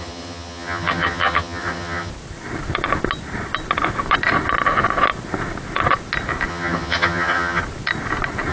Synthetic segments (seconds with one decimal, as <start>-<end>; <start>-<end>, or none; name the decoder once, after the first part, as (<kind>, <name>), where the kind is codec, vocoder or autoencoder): 0.0-2.1 (vocoder, HiFi-GAN); 6.5-7.6